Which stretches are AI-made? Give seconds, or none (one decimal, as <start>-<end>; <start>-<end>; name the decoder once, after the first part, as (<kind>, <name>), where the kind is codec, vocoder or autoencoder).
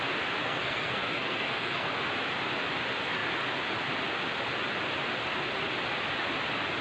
0.4-2.0 (codec, SNAC)